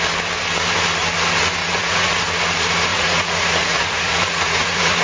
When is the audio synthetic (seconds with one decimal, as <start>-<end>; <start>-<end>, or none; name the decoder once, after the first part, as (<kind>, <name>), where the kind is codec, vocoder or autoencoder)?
1.6-2.2 (vocoder, Vocos); 2.9-5.0